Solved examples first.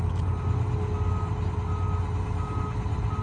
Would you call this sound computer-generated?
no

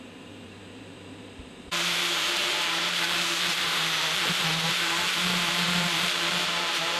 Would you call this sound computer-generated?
yes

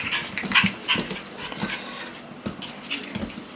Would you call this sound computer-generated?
no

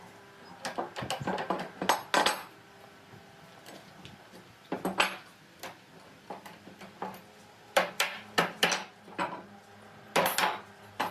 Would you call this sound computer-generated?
no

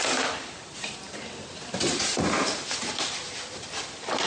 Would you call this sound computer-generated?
yes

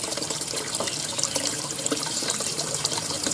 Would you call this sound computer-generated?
yes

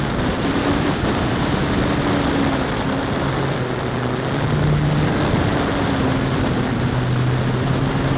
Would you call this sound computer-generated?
no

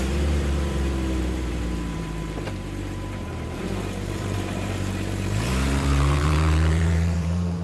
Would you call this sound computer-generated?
yes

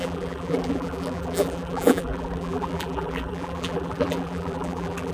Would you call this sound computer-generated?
yes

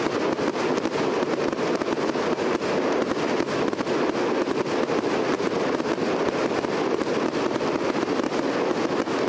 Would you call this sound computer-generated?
no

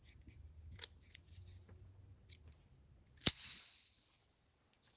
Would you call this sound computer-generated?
no